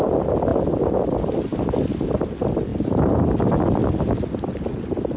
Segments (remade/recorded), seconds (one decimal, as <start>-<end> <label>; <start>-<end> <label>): 0.0-0.5 recorded; 0.5-1.8 remade; 1.8-5.2 recorded